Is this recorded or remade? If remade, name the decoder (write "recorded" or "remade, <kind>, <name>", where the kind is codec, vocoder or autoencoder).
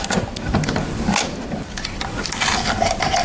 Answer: recorded